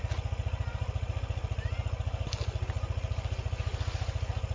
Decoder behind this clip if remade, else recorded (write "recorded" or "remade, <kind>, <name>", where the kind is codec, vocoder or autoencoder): recorded